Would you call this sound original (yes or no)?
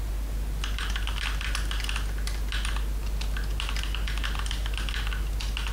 yes